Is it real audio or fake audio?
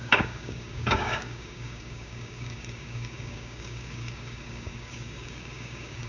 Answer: fake